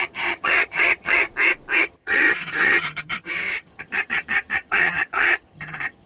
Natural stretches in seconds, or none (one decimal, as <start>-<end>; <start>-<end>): 1.2-1.8